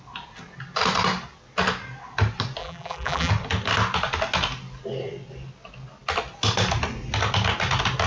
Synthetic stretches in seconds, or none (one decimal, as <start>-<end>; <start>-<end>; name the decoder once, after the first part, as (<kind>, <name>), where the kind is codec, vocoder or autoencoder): 2.6-3.3 (vocoder, BigVGAN v2)